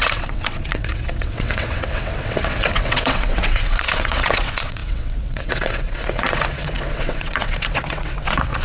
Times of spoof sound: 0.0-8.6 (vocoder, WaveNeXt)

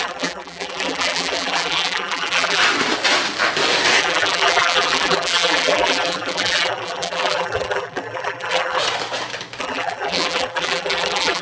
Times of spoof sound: 0.0-2.6 (vocoder, BigVGAN v2); 4.0-8.8; 9.6-11.4

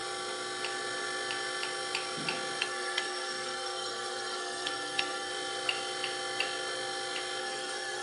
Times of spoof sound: 2.6-5.3 (codec, SNAC); 7.4-8.0

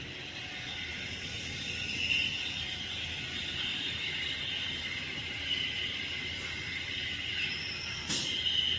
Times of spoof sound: 0.9-1.8 (vocoder, BigVGAN v2); 3.7-8.4

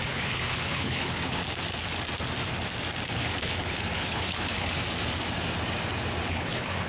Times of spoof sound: 0.0-1.4 (codec, HILCodec); 3.1-4.8; 6.3-6.9

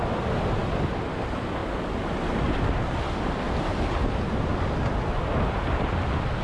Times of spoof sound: none

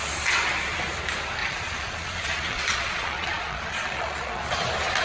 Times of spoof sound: 1.4-4.4 (vocoder, Vocos)

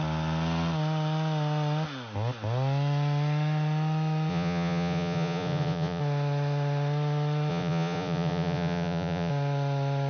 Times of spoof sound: 4.3-6.0 (vocoder, Vocos); 7.5-9.3